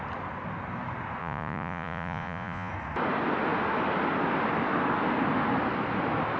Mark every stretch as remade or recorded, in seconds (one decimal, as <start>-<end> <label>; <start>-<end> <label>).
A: 0.0-1.2 recorded; 1.2-2.7 remade; 2.7-6.4 recorded